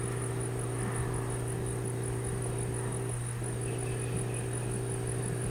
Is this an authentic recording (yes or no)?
yes